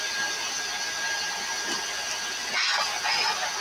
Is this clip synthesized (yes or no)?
no